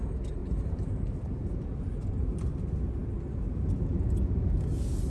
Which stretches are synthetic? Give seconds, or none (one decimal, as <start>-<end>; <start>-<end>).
0.4-1.9